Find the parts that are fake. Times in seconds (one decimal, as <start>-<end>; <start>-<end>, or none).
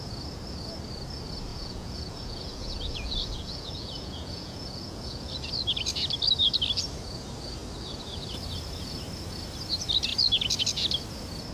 1.5-5.5